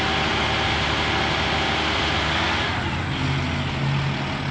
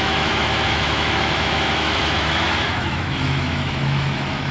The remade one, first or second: second